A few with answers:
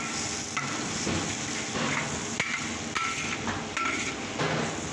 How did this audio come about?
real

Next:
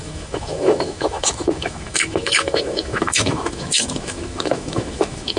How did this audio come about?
fake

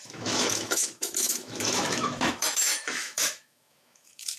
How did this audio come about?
fake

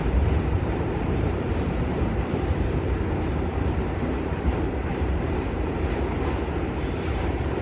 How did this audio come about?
fake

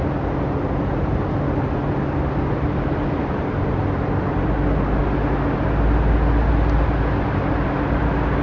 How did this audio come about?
real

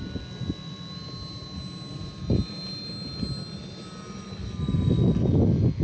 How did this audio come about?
real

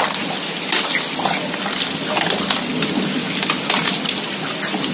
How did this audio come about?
real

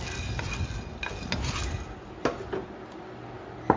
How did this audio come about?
real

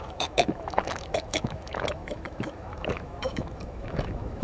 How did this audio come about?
fake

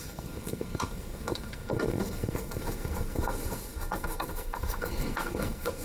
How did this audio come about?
fake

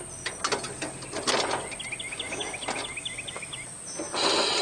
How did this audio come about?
real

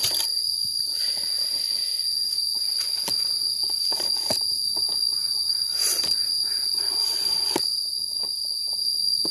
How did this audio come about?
real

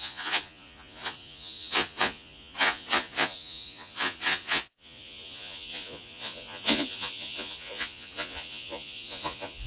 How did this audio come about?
fake